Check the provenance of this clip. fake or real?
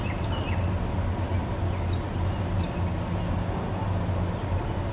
real